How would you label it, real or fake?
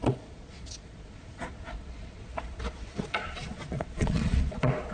fake